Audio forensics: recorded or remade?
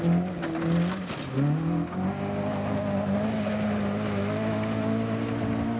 recorded